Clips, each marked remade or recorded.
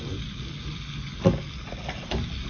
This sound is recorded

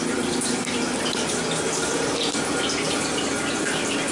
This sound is recorded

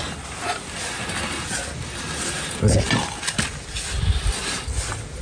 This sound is recorded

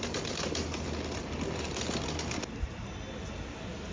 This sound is recorded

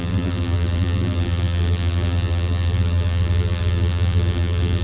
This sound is remade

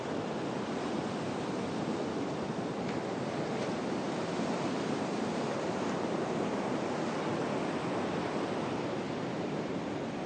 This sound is remade